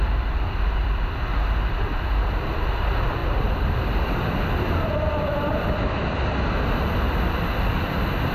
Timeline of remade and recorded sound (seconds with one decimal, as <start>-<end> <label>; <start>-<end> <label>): 0.0-8.3 remade